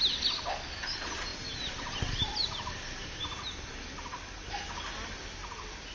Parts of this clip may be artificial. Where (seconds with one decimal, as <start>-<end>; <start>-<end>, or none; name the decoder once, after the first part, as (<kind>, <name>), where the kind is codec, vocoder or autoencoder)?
none